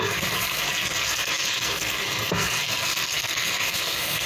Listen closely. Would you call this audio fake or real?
fake